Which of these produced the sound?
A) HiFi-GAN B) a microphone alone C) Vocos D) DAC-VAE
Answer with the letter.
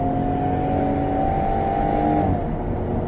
B